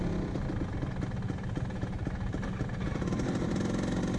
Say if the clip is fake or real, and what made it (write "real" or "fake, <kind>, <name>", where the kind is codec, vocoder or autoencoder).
real